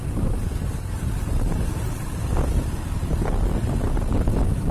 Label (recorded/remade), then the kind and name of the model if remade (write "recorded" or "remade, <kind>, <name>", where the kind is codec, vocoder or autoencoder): recorded